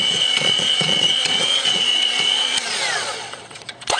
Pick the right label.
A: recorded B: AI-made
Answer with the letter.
B